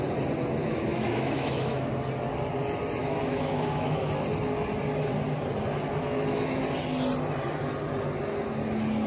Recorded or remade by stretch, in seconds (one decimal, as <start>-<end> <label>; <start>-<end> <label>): 0.0-0.6 recorded; 0.6-1.9 remade; 1.9-3.0 recorded; 3.0-4.1 remade; 4.1-6.0 recorded; 6.0-6.6 remade; 6.6-9.1 recorded